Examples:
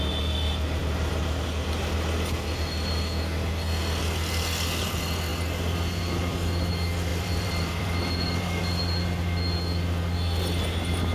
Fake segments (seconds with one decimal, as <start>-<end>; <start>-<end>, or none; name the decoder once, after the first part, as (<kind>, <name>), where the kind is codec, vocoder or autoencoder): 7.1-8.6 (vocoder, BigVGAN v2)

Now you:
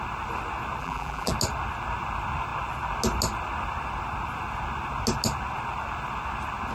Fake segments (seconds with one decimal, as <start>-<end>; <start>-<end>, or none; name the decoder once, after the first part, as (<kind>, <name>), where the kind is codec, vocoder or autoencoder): 0.8-1.3 (vocoder, BigVGAN v2)

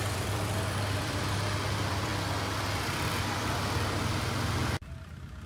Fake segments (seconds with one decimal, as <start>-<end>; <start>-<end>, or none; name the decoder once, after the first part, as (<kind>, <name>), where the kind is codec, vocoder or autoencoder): 0.0-2.1 (vocoder, BigVGAN v2); 3.1-5.5

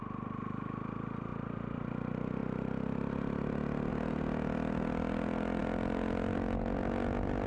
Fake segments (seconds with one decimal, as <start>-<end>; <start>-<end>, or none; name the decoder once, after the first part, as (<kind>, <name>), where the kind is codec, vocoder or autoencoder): 1.3-1.9 (vocoder, BigVGAN v2); 2.4-3.5

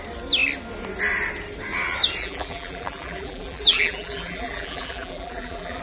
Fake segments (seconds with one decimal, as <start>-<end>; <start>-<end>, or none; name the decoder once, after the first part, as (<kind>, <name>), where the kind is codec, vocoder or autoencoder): 2.2-5.8 (vocoder, BigVGAN v2)

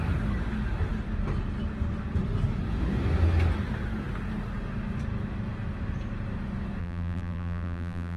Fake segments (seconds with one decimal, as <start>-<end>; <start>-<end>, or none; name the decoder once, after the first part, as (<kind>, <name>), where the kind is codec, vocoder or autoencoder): 6.8-8.2 (vocoder, BigVGAN v2)